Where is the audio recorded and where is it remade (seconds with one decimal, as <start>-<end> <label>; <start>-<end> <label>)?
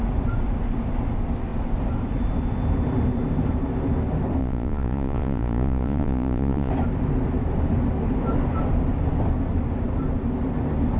0.0-4.4 recorded; 4.4-6.7 remade; 6.7-11.0 recorded